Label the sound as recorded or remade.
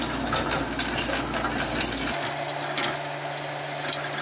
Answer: recorded